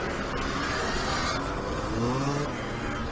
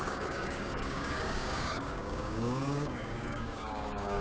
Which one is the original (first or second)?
first